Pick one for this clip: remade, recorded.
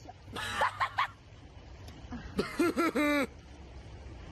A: recorded